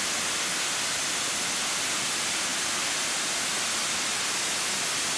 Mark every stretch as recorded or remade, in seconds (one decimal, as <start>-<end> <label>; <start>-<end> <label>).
0.0-5.2 recorded